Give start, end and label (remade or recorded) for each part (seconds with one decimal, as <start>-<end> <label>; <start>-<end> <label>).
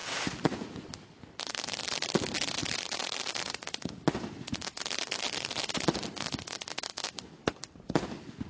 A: 0.0-0.9 remade; 0.9-2.6 recorded; 2.6-3.9 remade; 3.9-8.5 recorded